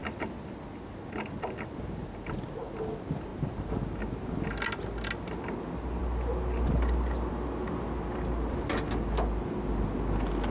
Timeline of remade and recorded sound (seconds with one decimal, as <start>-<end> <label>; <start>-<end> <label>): 0.0-10.5 recorded